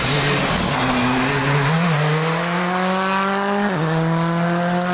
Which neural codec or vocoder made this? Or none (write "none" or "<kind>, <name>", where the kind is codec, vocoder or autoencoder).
none